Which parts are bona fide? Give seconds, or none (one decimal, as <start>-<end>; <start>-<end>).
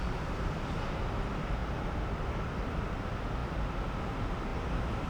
0.0-5.1